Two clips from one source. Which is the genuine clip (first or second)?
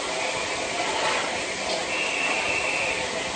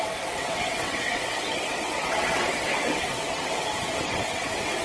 first